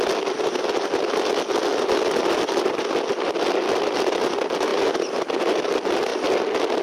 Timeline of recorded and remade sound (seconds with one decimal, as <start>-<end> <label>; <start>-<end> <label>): 0.0-6.8 recorded